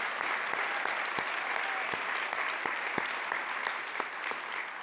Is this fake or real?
real